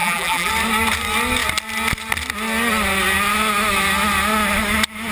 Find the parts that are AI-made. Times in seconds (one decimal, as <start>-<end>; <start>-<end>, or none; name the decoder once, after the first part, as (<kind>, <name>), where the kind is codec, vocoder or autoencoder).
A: 0.0-0.5 (vocoder, BigVGAN v2)